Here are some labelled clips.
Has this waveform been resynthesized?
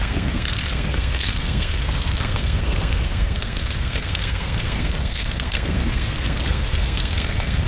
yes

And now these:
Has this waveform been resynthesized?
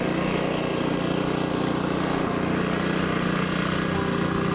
no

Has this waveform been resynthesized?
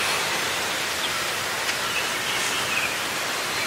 no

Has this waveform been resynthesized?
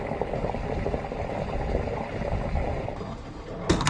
no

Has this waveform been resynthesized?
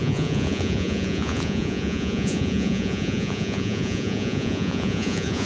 yes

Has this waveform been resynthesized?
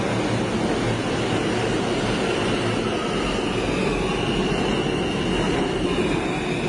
no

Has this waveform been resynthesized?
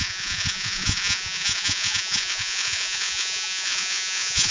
yes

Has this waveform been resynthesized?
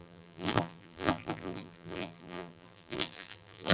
yes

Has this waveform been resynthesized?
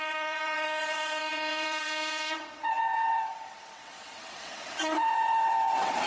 yes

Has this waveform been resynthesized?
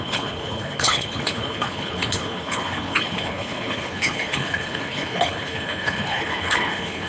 yes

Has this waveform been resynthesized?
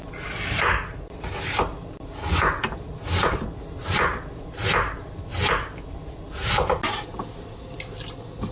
no